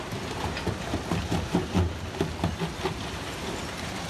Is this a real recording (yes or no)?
yes